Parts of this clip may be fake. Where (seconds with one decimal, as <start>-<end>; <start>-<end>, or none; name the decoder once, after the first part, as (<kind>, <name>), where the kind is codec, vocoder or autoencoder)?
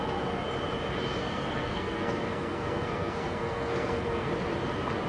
1.2-4.3 (codec, SNAC)